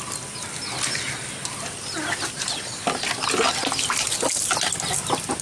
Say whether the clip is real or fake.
real